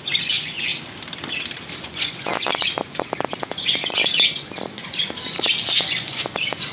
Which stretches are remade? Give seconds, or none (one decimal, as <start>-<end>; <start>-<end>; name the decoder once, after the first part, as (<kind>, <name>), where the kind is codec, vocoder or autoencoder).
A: 0.0-0.7 (vocoder, Vocos); 1.8-6.7